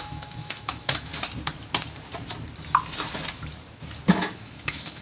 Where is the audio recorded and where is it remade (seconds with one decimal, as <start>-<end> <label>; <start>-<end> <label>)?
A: 0.0-1.1 remade; 1.1-4.1 recorded; 4.1-5.0 remade